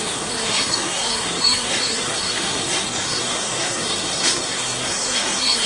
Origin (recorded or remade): remade